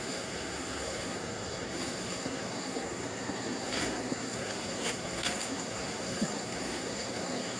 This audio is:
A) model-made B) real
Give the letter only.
A